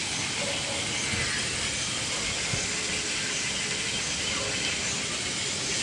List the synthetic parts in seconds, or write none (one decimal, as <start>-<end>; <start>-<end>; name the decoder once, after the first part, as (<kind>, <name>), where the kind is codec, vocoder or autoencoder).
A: none